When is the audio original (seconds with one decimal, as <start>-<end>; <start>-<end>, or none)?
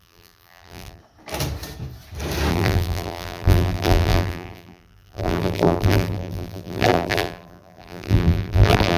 1.0-2.5